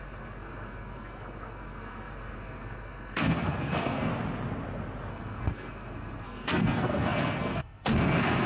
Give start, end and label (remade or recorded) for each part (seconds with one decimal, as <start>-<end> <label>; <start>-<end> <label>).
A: 0.0-4.1 remade; 4.1-5.1 recorded; 5.1-8.5 remade